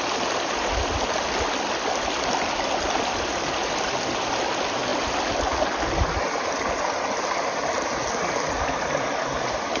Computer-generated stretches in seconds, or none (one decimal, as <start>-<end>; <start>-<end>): none

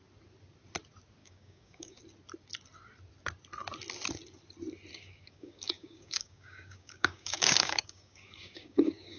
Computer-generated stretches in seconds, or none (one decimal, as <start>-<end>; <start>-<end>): 1.2-2.0; 4.9-9.2

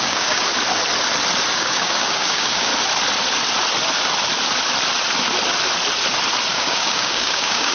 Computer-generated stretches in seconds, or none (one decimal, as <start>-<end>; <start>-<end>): 0.0-0.5; 1.5-2.7; 6.5-7.7

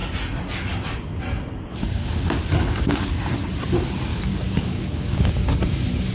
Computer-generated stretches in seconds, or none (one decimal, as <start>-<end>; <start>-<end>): 1.7-3.1; 4.1-5.3

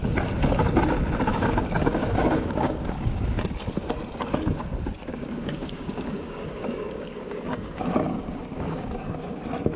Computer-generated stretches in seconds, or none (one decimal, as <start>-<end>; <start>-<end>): 1.3-3.5; 5.1-9.4

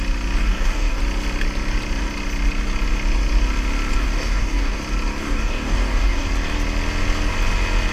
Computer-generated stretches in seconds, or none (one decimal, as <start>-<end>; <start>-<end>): 0.4-1.0; 4.0-4.8; 5.2-6.3